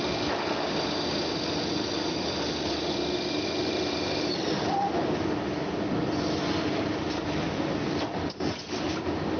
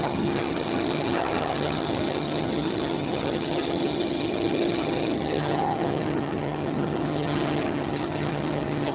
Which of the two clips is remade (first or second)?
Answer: second